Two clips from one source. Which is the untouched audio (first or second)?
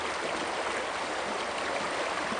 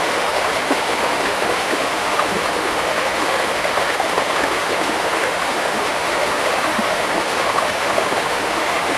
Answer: first